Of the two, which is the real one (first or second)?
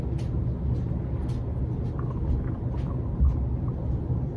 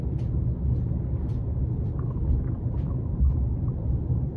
first